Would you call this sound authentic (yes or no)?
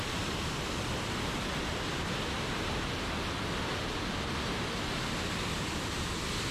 yes